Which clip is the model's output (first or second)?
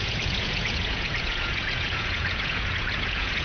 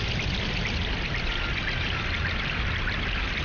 first